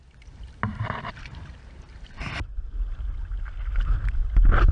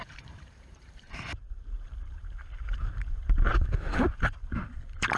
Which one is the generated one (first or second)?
second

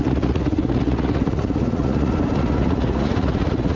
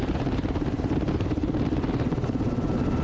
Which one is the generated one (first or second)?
first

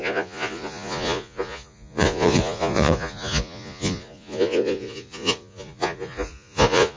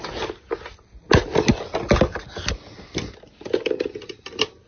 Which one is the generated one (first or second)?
first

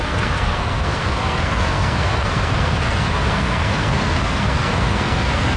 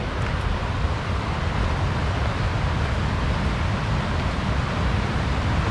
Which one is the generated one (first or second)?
first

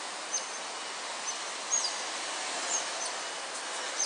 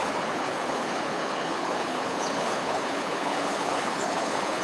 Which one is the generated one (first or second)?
second